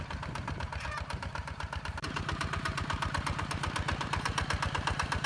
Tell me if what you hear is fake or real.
fake